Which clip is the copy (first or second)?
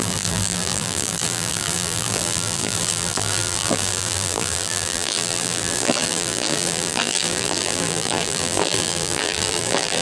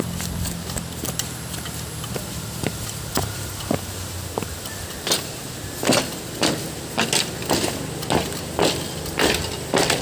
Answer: first